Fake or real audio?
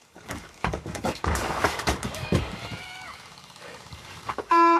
fake